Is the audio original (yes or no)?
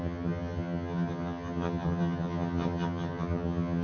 no